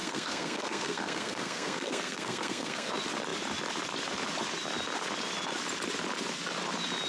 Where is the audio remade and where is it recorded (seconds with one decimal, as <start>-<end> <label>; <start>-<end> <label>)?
0.0-2.9 remade; 2.9-7.1 recorded